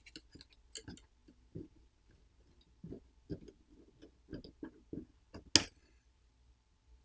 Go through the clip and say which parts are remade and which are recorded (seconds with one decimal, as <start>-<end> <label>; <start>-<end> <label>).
0.0-7.0 recorded